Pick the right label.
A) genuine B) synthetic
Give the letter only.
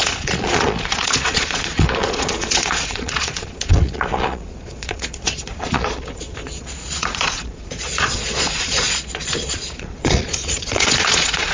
B